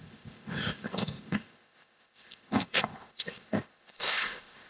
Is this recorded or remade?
remade